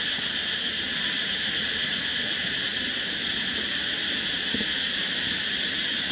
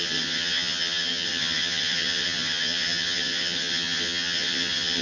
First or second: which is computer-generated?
second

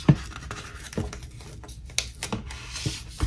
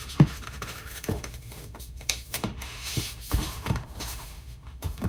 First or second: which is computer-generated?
second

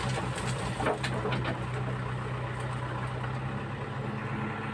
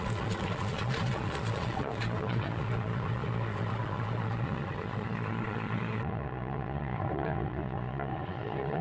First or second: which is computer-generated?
second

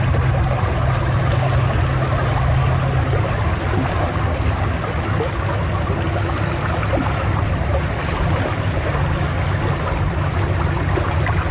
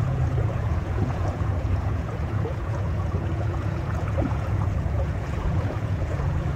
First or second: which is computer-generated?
second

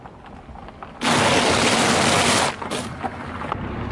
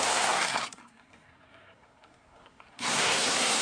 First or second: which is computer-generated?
second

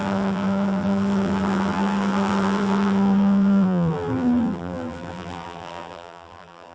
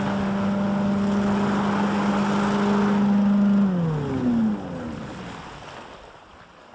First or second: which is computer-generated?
first